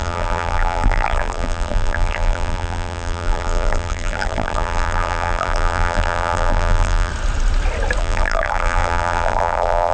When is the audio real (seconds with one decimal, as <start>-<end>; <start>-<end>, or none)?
7.1-8.0